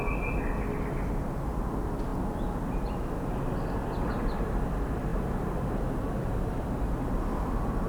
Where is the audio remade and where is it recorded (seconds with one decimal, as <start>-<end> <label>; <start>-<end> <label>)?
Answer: 0.0-5.1 recorded; 5.1-6.7 remade; 6.7-7.9 recorded